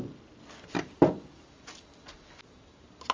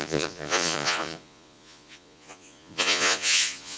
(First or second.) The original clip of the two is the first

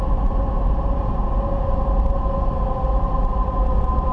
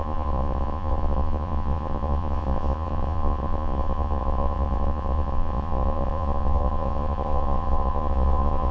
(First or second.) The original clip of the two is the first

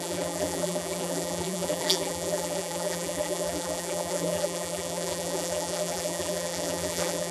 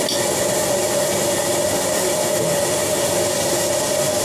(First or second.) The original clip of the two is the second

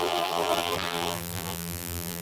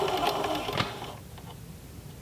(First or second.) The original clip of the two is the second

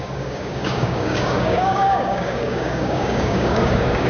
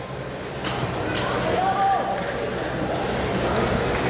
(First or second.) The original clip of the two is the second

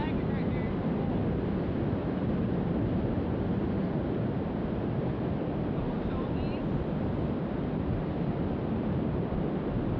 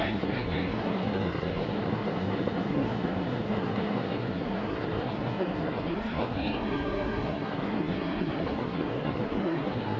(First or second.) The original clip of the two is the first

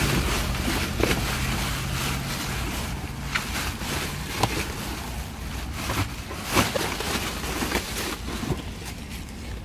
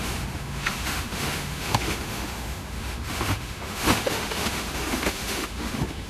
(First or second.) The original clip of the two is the first